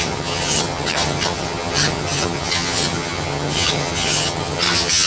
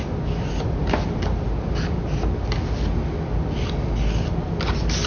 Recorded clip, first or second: second